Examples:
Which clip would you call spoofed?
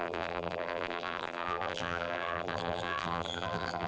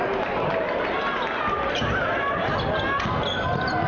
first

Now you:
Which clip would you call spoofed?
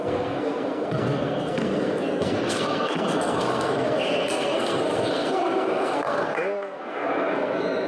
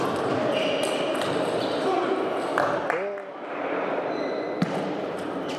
first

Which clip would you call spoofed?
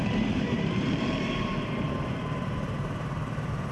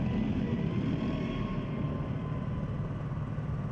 first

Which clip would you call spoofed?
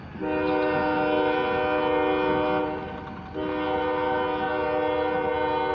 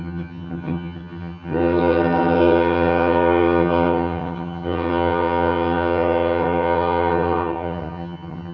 second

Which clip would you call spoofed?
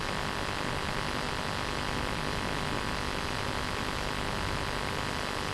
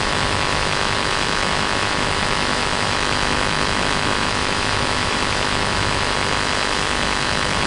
second